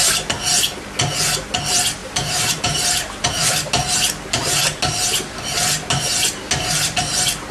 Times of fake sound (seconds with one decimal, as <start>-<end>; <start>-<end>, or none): 2.0-3.3